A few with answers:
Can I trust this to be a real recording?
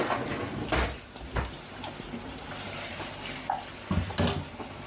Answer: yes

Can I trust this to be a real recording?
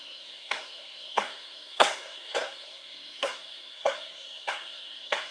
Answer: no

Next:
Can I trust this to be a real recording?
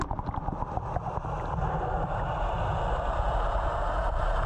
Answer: yes